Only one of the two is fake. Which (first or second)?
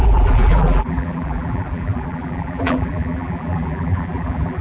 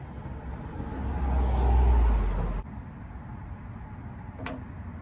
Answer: first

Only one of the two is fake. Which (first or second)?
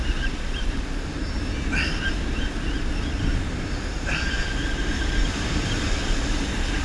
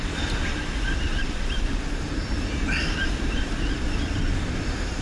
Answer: second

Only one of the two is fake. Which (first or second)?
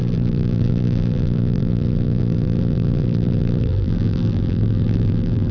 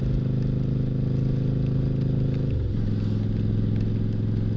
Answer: first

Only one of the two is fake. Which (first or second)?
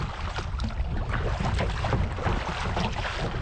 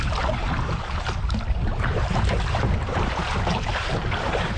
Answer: second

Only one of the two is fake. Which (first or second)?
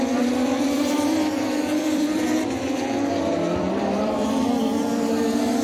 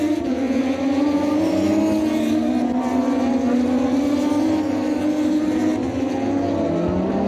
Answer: first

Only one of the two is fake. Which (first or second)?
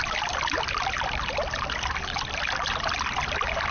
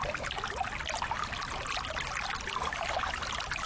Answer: first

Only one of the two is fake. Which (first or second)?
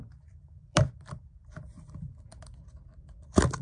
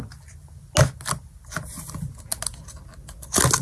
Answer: first